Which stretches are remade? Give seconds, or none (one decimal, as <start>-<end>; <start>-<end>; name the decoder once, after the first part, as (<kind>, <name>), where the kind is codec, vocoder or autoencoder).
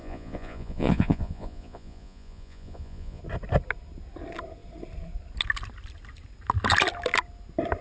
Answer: 0.0-3.2 (vocoder, Vocos)